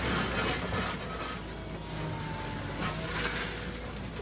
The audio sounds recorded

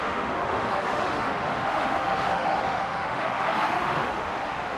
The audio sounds remade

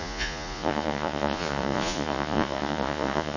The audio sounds remade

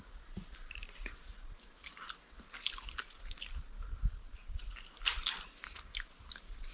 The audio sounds recorded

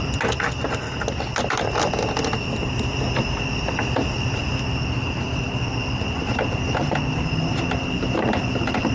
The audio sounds recorded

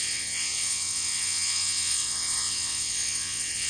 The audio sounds remade